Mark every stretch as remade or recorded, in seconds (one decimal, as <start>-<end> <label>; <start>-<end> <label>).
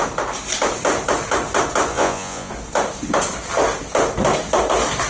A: 0.0-1.9 recorded; 1.9-2.5 remade; 2.5-5.1 recorded